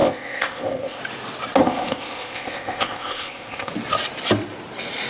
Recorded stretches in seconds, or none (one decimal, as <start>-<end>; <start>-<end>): 1.0-1.6; 3.7-5.1